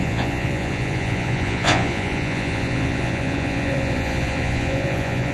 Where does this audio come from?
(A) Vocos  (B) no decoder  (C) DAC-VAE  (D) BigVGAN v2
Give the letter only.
A